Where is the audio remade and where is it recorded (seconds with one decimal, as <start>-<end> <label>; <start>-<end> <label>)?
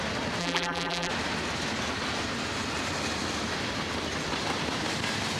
0.0-0.4 recorded; 0.4-1.1 remade; 1.1-5.4 recorded